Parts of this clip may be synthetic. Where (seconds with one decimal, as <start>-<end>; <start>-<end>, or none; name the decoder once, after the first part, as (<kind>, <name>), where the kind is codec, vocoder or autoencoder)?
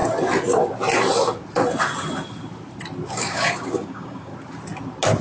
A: 3.1-4.3 (codec, DAC)